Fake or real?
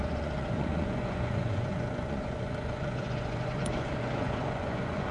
fake